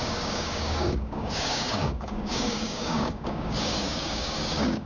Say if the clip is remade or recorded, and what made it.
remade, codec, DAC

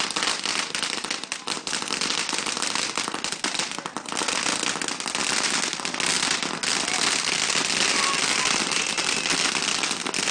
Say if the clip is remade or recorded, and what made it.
recorded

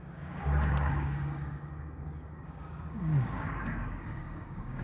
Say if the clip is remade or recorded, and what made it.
remade, codec, DAC